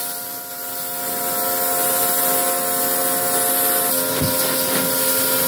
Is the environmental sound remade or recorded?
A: recorded